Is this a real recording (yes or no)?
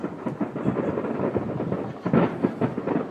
yes